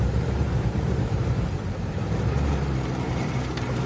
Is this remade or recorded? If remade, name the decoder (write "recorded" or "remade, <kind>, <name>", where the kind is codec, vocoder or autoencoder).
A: remade, vocoder, BigVGAN v2